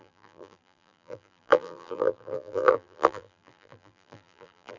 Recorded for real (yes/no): no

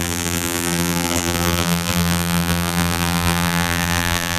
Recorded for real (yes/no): no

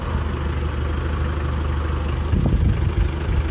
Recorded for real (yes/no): yes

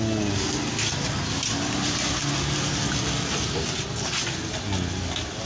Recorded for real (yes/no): yes